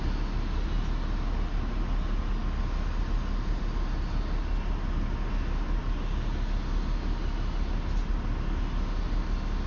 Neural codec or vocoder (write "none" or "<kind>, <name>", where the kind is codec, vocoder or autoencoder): none